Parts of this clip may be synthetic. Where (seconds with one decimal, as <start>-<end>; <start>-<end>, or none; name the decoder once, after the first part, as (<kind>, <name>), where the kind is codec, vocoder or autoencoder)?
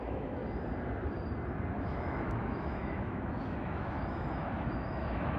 0.0-0.4 (autoencoder, DAC-VAE); 1.8-5.4